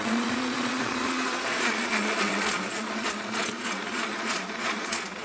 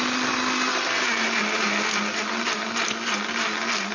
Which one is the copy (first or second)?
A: first